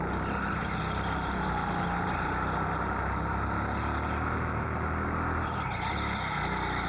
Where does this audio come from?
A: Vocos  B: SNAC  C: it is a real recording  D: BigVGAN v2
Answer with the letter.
C